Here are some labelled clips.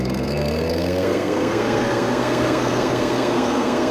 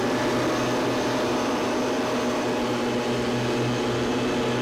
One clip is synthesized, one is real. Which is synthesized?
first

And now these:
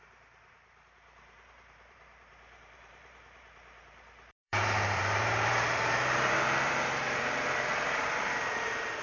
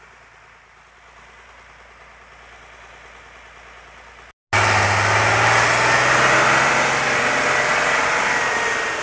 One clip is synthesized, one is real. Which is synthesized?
first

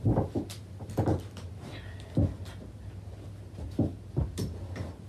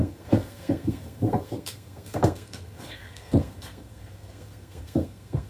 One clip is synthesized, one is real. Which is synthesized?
second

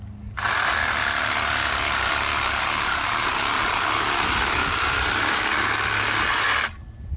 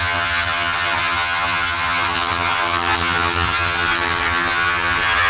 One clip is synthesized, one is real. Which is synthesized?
second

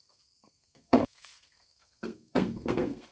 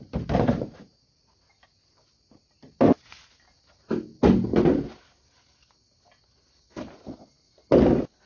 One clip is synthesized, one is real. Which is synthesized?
first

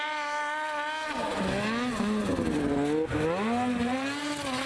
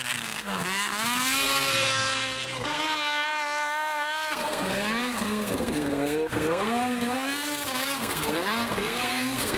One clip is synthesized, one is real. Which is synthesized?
second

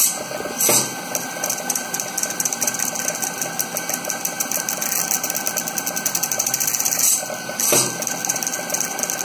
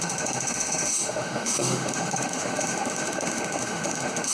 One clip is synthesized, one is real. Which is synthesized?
second